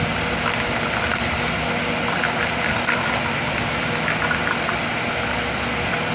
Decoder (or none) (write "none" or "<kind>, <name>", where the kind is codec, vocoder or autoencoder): none